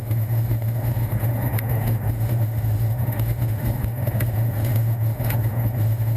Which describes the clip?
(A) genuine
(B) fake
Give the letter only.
B